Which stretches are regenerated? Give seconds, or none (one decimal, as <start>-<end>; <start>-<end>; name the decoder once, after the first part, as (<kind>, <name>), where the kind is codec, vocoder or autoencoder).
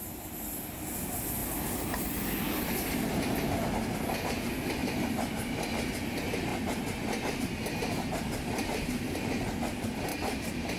none